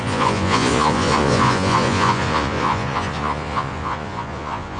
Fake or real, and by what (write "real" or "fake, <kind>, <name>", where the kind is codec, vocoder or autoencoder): fake, vocoder, Vocos